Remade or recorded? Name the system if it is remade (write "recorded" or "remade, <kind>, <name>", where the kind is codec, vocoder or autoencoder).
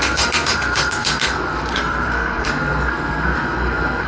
remade, codec, SNAC